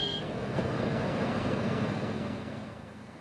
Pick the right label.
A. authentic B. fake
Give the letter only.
B